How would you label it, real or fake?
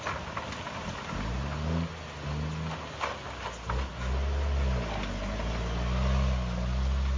real